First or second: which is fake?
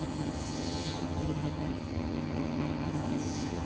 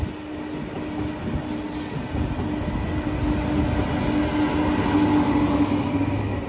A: first